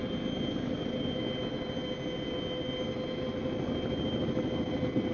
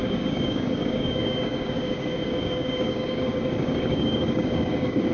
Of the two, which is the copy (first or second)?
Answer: second